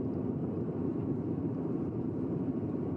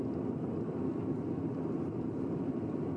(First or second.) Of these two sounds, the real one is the second